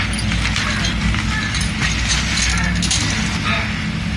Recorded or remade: recorded